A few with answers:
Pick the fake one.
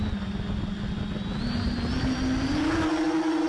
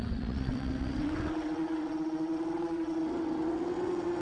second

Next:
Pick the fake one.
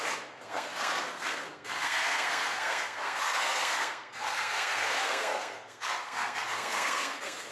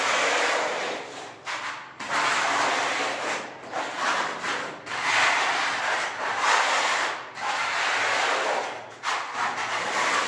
first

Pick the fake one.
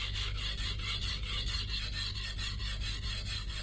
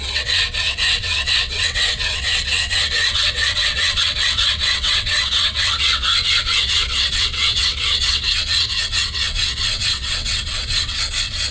second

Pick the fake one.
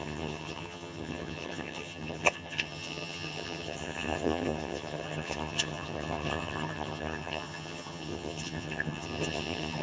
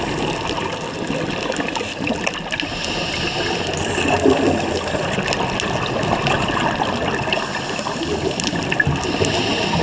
first